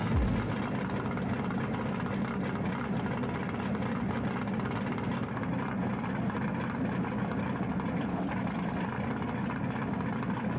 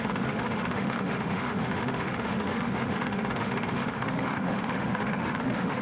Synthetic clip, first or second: second